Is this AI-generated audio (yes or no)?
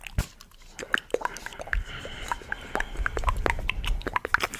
no